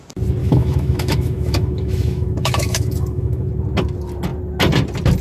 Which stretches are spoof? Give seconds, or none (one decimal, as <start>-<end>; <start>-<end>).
0.4-3.5